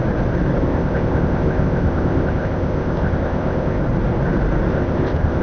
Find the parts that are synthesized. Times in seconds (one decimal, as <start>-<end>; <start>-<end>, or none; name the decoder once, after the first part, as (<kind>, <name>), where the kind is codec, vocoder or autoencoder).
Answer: 0.6-3.8 (codec, ZipCodec); 4.7-5.4